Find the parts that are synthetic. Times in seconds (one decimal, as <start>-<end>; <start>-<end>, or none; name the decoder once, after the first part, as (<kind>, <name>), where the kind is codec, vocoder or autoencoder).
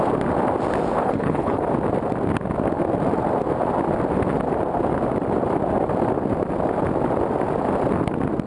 1.0-1.6 (codec, HILCodec)